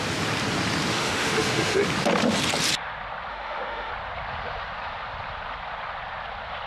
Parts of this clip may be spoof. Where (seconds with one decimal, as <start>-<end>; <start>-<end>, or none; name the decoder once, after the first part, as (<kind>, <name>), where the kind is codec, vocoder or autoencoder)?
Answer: 0.9-1.8 (autoencoder, DAC-VAE); 3.3-3.9